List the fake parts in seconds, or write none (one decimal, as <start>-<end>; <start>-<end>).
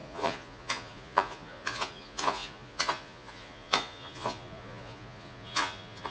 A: 0.0-6.1